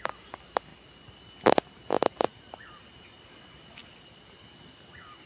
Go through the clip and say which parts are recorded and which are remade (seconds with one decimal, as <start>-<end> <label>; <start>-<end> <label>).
0.0-5.3 recorded